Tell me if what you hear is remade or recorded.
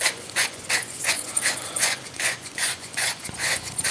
remade